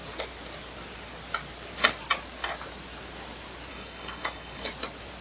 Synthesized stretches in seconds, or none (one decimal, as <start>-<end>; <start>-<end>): 3.7-4.7